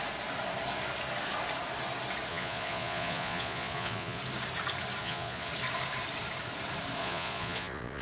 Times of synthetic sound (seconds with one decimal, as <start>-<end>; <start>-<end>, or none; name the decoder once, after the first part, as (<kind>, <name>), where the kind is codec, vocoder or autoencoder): 2.3-4.2 (vocoder, Vocos); 5.0-5.5; 7.0-8.0